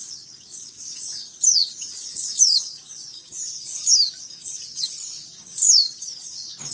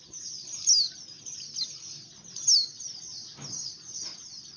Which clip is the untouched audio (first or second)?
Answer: second